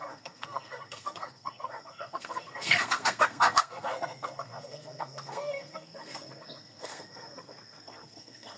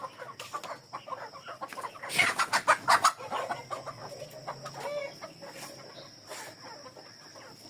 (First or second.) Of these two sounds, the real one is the second